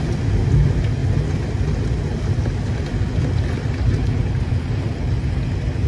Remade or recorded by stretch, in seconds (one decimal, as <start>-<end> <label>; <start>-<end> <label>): 0.0-5.9 recorded